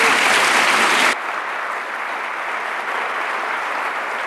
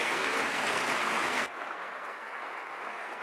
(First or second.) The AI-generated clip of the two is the second